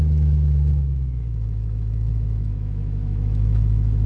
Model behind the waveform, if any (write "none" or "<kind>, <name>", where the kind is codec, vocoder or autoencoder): autoencoder, DAC-VAE